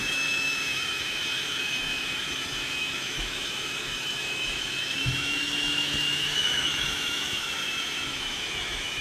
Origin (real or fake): fake